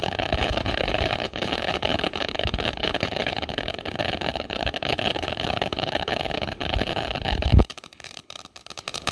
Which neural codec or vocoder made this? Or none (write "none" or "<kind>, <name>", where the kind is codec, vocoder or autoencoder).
codec, HILCodec